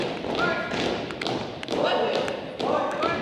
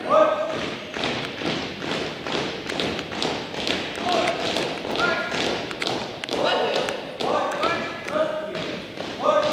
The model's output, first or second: second